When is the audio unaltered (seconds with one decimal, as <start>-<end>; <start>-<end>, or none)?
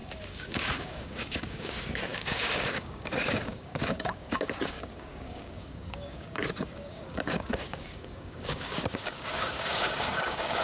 none